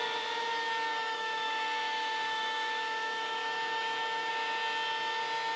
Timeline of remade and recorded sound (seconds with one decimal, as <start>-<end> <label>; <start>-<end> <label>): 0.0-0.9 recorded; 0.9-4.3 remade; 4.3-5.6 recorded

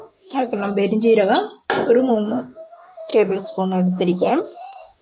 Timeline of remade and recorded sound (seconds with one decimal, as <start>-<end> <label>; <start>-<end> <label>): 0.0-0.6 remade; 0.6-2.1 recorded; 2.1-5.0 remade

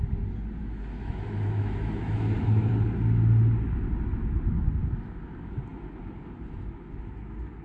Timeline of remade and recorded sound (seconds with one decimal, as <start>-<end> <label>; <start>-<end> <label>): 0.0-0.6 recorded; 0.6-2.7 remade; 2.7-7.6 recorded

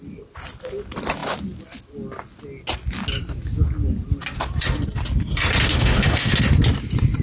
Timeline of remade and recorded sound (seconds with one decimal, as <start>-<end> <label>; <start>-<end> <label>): 0.0-5.7 recorded; 5.7-6.3 remade; 6.3-7.2 recorded

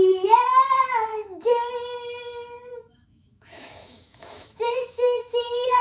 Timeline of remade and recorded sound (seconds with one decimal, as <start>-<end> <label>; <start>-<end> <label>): 0.0-1.1 recorded; 1.1-1.7 remade; 1.7-2.7 recorded; 2.7-5.8 remade